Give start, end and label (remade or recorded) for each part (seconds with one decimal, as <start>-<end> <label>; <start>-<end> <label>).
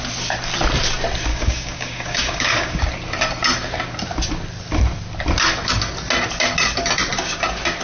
0.0-1.3 recorded; 1.3-2.8 remade; 2.8-7.8 recorded